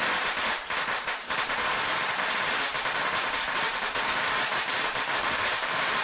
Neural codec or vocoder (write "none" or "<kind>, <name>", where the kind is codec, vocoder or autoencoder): vocoder, BigVGAN v2